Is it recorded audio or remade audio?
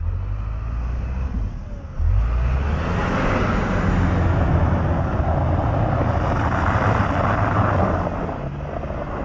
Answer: recorded